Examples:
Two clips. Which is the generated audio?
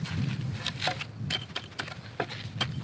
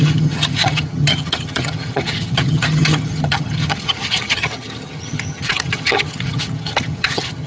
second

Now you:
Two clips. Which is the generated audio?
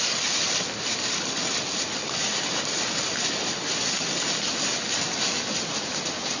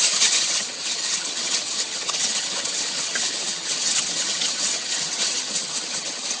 second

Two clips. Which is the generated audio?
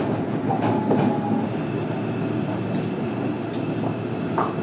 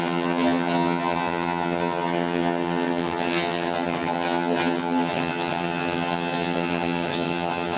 second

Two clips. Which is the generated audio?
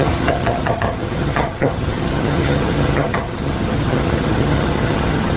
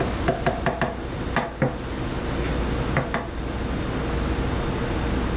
first